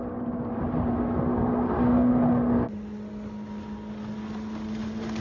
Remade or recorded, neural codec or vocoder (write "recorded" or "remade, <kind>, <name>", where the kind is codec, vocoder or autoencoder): recorded